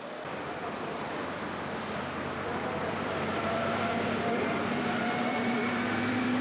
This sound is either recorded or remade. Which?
remade